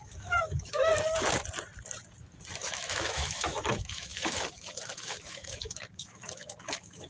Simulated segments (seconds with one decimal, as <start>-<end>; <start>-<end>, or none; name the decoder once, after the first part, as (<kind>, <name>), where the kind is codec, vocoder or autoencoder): 0.0-0.9 (autoencoder, DAC-VAE); 2.6-7.1